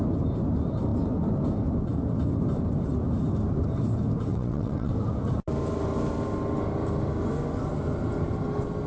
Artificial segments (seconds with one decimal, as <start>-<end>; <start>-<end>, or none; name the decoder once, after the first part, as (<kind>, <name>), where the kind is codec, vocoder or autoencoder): 4.3-4.9 (vocoder, WaveNeXt)